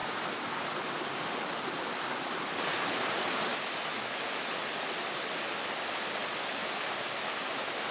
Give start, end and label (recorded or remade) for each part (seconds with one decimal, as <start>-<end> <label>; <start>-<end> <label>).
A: 0.0-3.5 recorded; 3.5-4.5 remade; 4.5-7.9 recorded